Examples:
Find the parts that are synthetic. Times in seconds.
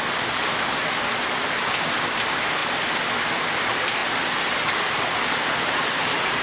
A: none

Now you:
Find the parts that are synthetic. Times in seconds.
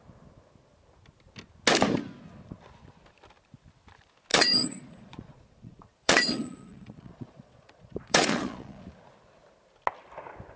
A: 4.3-8.8 (vocoder, Vocos)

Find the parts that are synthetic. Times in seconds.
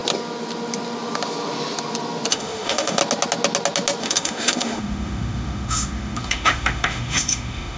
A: 2.3-3.0 (autoencoder, DAC-VAE); 4.0-7.8